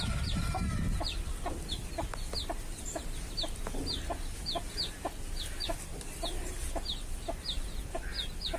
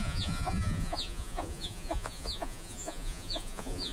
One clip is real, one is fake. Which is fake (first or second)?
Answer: second